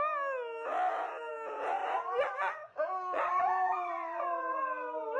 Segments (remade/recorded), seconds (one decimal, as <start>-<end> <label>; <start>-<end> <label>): 0.0-1.8 recorded; 1.8-4.6 remade; 4.6-5.2 recorded